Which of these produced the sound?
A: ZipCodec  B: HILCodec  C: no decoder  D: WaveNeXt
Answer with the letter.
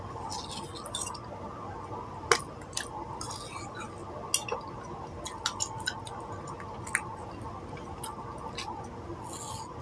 C